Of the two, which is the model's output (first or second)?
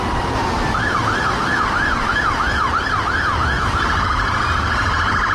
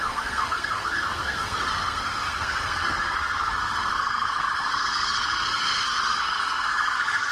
second